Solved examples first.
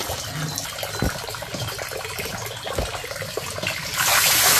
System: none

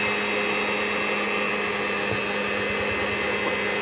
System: none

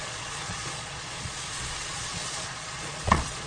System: vocoder, Vocos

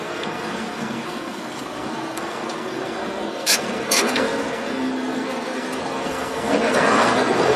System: codec, SNAC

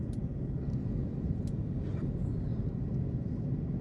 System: none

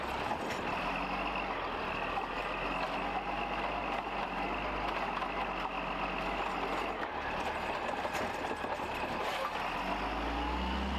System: none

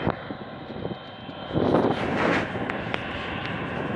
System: none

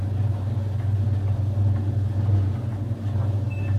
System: none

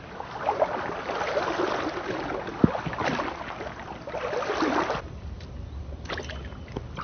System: none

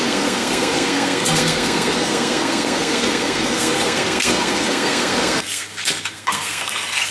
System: codec, SNAC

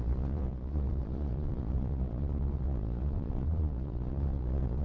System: vocoder, Vocos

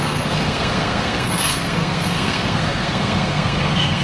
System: codec, SNAC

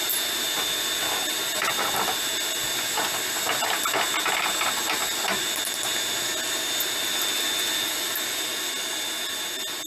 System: none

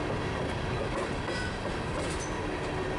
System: none